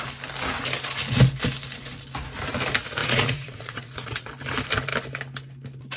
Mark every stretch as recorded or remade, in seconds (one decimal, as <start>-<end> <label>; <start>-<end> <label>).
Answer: 0.0-3.0 recorded; 3.0-4.3 remade; 4.3-6.0 recorded